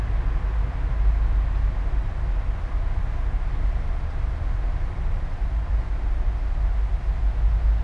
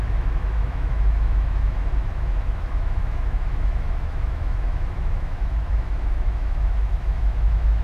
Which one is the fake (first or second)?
second